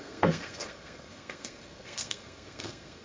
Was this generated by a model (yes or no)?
yes